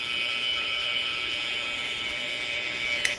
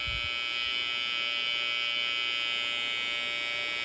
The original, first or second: second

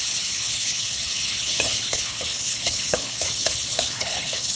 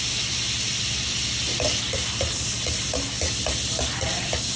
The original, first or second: second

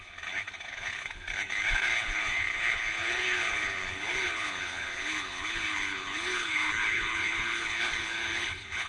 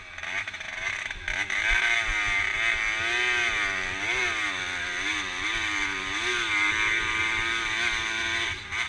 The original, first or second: second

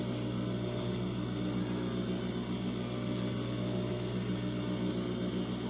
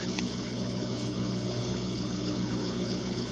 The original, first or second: first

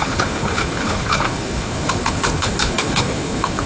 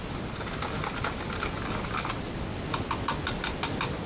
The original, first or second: second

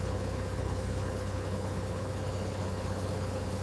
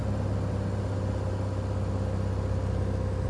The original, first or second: second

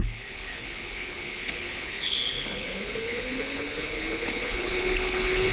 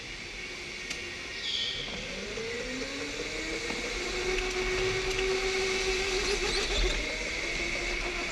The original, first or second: second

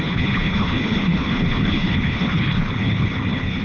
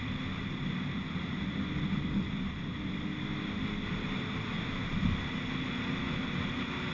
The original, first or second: second